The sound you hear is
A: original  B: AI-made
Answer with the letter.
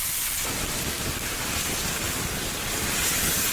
A